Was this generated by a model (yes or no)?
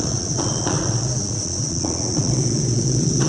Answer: yes